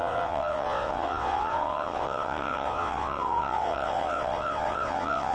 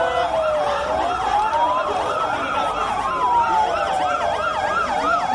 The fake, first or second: first